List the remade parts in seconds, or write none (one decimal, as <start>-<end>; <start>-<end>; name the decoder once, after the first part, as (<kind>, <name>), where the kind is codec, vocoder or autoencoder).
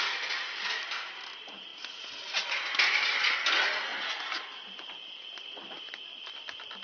none